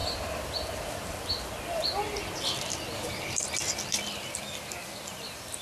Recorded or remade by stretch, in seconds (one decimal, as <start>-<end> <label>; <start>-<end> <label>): 0.0-5.6 recorded